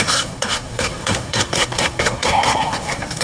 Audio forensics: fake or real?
fake